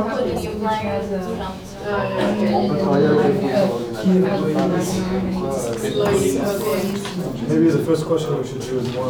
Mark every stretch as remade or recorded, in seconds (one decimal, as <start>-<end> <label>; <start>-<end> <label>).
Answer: 0.0-0.5 recorded; 0.5-5.6 remade; 5.6-9.1 recorded